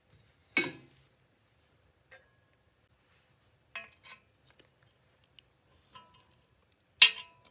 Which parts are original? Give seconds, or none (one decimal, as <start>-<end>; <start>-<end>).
0.0-7.5